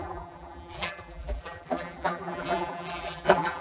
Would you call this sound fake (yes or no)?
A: yes